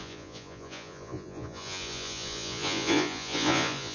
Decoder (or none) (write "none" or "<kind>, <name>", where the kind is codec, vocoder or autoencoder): vocoder, Vocos